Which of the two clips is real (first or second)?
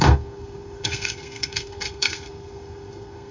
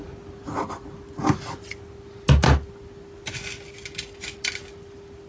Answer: second